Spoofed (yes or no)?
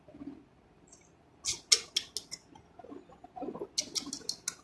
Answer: no